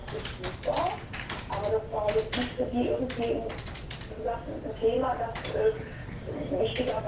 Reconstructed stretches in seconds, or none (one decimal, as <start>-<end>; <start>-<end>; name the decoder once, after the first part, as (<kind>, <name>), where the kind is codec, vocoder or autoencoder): none

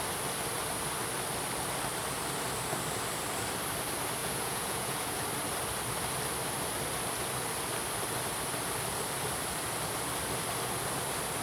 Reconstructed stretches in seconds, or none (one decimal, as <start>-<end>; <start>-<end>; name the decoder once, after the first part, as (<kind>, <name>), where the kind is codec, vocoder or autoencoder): 4.2-5.2 (vocoder, Vocos)

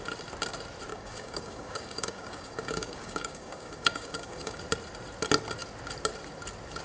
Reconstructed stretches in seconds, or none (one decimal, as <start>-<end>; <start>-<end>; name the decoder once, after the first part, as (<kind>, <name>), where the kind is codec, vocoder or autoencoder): 0.9-4.6 (codec, DAC)

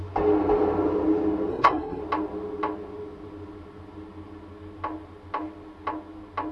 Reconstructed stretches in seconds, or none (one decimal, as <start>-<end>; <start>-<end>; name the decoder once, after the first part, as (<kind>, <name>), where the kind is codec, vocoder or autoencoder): 1.5-2.0 (codec, SNAC)

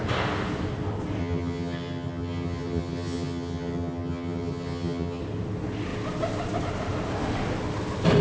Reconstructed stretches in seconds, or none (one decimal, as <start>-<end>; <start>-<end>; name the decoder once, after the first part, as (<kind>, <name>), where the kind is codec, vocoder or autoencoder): 1.2-5.2 (vocoder, HiFi-GAN)

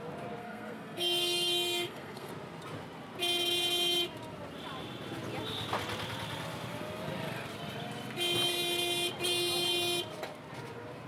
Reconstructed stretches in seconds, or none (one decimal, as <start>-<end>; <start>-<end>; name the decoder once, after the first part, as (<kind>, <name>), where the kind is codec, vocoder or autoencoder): 0.4-2.3 (codec, SNAC)